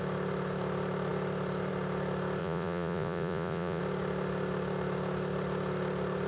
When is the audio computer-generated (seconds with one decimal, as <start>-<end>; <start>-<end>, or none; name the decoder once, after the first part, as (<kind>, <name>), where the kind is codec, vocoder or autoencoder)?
2.4-3.8 (vocoder, Vocos)